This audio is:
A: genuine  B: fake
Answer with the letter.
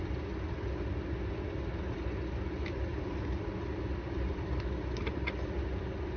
A